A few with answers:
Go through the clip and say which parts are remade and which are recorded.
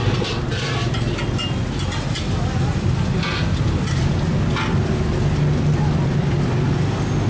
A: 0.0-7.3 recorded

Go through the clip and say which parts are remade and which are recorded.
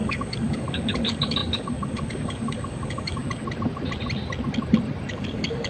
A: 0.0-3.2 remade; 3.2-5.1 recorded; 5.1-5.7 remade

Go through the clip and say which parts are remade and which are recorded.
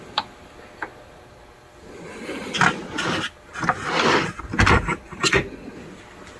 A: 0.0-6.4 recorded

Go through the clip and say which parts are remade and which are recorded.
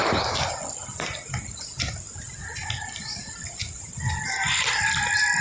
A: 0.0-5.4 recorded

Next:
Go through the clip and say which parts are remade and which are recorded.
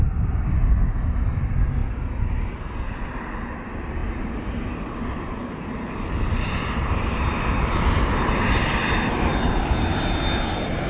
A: 0.0-10.9 recorded